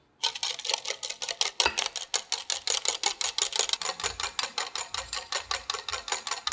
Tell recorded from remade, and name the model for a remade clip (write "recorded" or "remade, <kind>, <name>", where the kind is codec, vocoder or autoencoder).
recorded